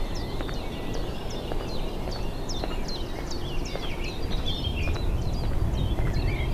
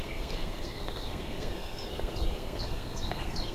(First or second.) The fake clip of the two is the second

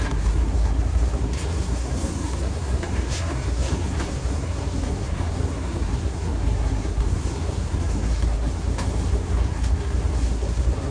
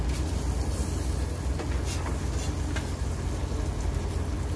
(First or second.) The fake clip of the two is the first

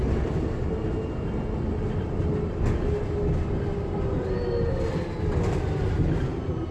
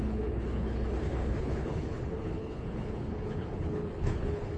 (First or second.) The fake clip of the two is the second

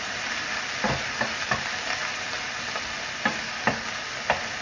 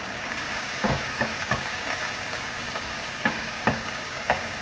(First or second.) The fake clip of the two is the second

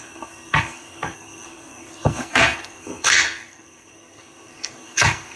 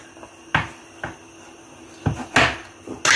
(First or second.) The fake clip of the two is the first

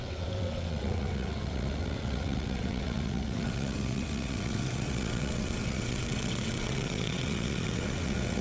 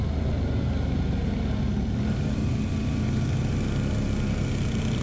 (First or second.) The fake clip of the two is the first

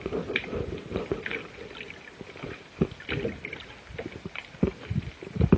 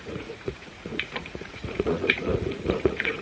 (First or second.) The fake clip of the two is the second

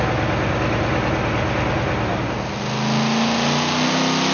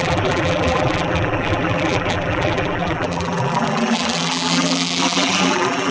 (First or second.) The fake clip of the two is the second